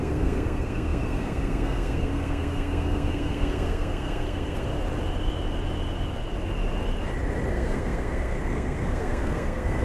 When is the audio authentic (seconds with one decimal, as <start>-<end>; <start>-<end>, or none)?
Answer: 4.7-7.5